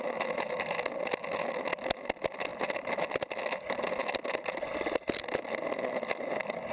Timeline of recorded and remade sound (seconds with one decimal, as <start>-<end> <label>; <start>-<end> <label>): 0.0-6.7 recorded